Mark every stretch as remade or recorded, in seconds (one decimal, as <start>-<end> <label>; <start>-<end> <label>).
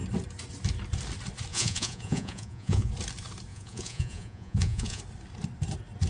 0.0-1.5 recorded; 1.5-2.9 remade; 2.9-3.5 recorded; 3.5-5.0 remade; 5.0-6.1 recorded